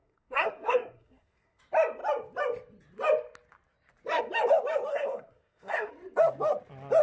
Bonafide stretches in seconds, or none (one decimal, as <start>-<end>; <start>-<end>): 1.6-4.9; 5.9-7.0